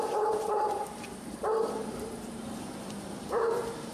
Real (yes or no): no